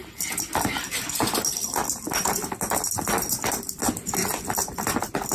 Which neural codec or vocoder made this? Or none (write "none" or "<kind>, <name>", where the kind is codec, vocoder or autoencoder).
none